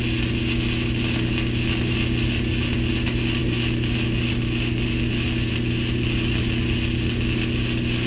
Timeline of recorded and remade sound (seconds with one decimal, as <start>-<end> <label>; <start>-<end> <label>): 0.0-8.1 recorded